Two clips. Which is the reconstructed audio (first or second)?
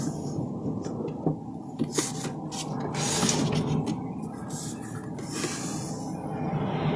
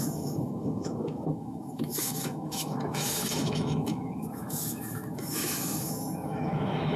second